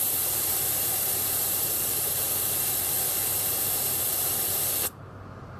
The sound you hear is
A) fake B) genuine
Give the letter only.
A